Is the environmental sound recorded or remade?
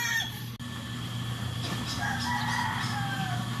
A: recorded